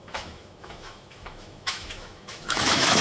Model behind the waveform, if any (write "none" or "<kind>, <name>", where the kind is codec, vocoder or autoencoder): autoencoder, DAC-VAE